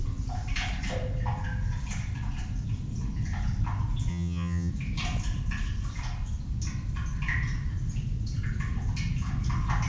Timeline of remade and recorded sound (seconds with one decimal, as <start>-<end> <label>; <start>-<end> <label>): 0.0-4.1 recorded; 4.1-4.7 remade; 4.7-9.9 recorded